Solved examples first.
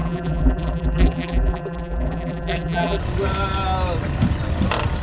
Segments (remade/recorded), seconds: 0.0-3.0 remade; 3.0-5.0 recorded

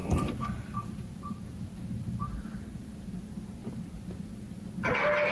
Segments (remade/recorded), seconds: 0.0-3.2 remade; 3.2-3.6 recorded; 3.6-4.3 remade; 4.3-5.3 recorded

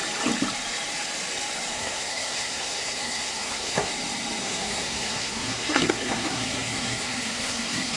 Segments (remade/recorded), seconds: 0.0-1.7 recorded; 1.7-3.9 remade; 3.9-4.4 recorded; 4.4-8.0 remade

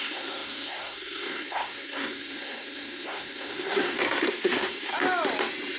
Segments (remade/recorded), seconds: 0.0-4.9 remade; 4.9-5.8 recorded

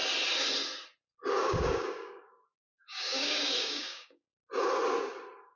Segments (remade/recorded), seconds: 0.0-1.3 recorded; 1.3-4.3 remade; 4.3-5.6 recorded

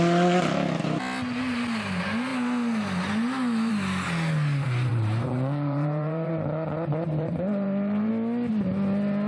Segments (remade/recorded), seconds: 0.0-4.9 recorded; 4.9-8.1 remade; 8.1-9.3 recorded

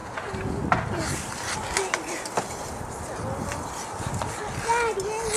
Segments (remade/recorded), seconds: 0.0-5.4 recorded